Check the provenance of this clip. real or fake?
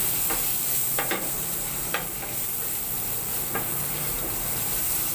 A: fake